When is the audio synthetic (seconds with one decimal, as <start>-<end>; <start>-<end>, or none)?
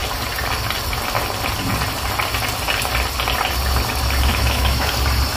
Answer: 4.3-4.9